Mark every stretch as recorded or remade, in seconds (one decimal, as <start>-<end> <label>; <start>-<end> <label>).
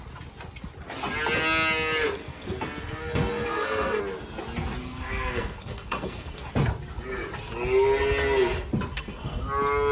0.0-2.2 recorded; 2.2-4.0 remade; 4.0-4.8 recorded; 4.8-6.5 remade; 6.5-8.9 recorded; 8.9-9.4 remade; 9.4-9.9 recorded